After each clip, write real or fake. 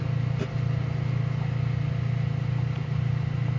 real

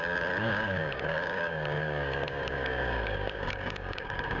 fake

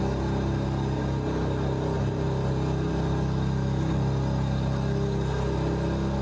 real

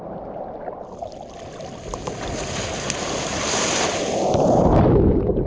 real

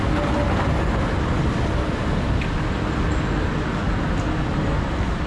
real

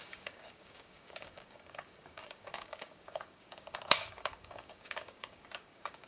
fake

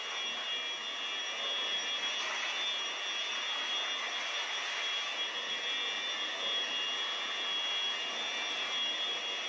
real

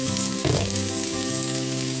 fake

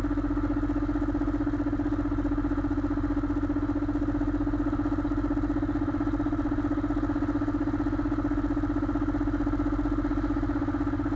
real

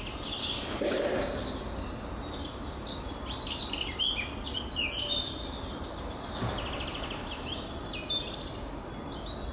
real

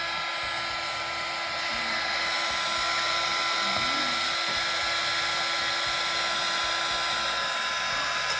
real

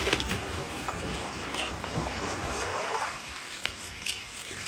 fake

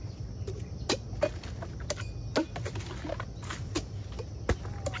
real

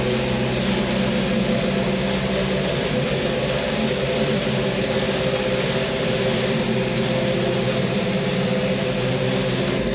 real